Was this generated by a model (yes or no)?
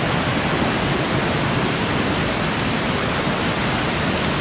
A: no